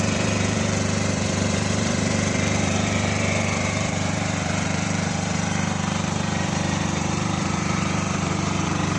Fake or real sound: fake